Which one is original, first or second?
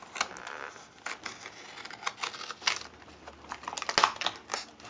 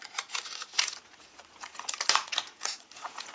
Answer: first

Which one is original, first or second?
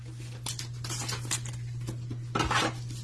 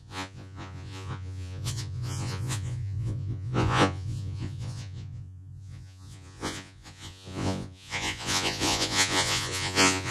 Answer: first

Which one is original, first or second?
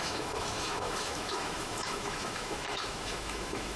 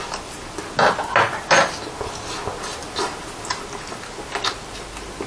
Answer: second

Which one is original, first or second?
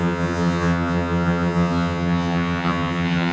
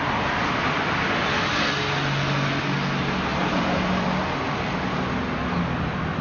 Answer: second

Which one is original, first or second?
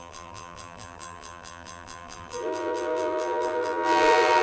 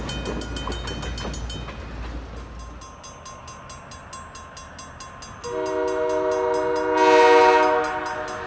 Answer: second